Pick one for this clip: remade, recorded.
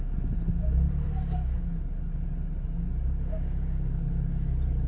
recorded